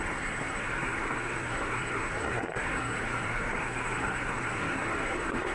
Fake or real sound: fake